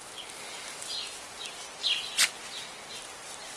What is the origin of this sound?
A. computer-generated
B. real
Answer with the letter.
B